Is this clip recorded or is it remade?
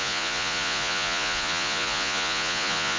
remade